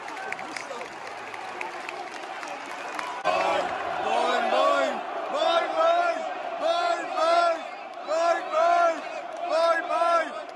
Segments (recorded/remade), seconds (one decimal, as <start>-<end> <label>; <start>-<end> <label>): 0.0-10.6 recorded